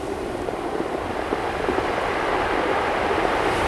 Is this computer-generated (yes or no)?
no